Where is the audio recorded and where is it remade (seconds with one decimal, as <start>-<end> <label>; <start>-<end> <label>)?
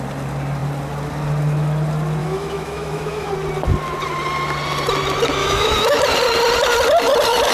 0.0-2.2 recorded; 2.2-3.3 remade; 3.3-5.4 recorded; 5.4-6.0 remade; 6.0-7.5 recorded